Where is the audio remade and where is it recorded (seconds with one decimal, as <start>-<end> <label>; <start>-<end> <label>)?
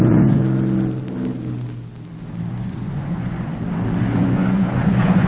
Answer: 0.0-0.4 remade; 0.4-2.5 recorded; 2.5-3.5 remade; 3.5-4.0 recorded; 4.0-5.3 remade